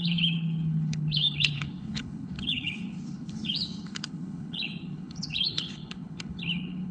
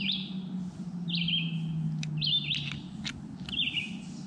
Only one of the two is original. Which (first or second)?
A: second